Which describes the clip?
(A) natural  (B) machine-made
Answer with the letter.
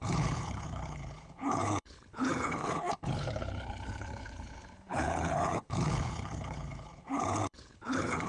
B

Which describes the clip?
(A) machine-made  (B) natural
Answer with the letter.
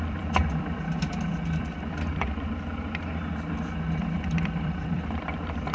A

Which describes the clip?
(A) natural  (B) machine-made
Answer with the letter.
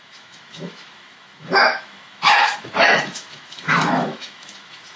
B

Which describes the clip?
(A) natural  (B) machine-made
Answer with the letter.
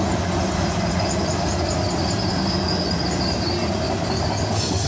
A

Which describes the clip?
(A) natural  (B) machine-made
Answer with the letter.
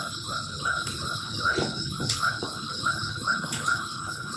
B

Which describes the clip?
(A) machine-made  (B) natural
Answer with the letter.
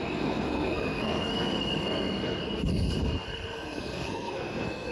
A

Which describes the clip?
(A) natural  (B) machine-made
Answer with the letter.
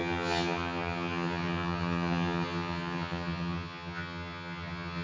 B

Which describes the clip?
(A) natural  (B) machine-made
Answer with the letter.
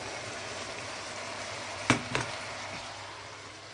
A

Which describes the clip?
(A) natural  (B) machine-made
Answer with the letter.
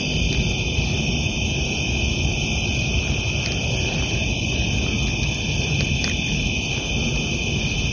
A